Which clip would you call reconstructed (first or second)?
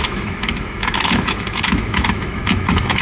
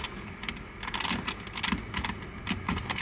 first